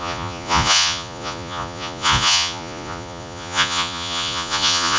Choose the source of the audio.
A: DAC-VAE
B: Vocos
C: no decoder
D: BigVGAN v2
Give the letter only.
B